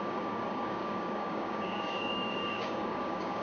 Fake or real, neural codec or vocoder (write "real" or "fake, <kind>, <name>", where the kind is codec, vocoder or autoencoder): fake, codec, DAC